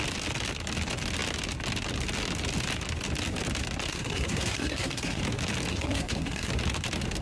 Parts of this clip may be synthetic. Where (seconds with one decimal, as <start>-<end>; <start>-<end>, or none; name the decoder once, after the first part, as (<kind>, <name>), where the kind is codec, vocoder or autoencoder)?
3.9-5.2 (codec, SNAC); 5.7-6.5